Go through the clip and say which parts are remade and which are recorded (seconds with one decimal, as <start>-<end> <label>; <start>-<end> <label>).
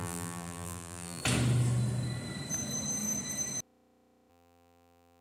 0.0-1.2 remade; 1.2-4.3 recorded; 4.3-5.2 remade